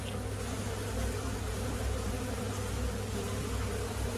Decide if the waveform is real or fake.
real